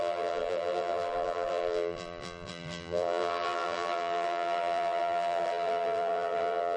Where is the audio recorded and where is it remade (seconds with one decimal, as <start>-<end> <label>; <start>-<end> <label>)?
0.0-6.8 remade